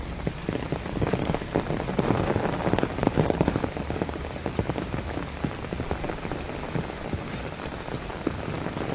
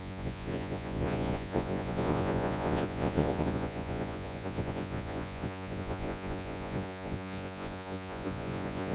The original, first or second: first